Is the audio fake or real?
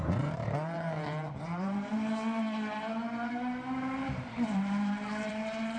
fake